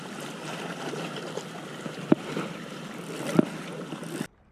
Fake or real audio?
real